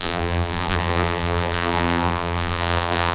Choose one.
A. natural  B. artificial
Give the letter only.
B